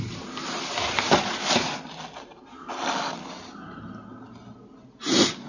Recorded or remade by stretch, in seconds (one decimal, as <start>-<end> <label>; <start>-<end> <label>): 0.0-1.7 remade; 1.7-5.0 recorded; 5.0-5.5 remade